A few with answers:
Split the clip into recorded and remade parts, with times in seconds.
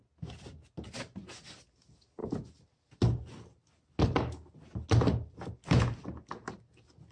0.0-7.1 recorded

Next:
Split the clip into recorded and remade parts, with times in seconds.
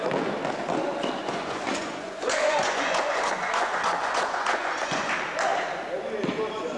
0.0-1.2 recorded; 1.2-5.1 remade; 5.1-6.8 recorded